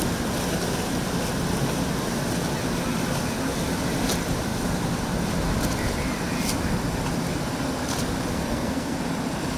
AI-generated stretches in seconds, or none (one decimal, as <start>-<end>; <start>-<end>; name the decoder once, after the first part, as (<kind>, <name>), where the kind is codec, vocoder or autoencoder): 8.3-9.0 (codec, SNAC)